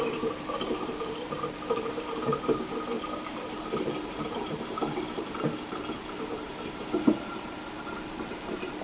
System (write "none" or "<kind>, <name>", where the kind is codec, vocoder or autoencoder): vocoder, BigVGAN v2